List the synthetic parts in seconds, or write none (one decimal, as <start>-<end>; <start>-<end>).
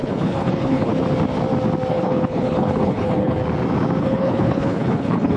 0.0-0.9; 1.9-3.4; 4.0-5.4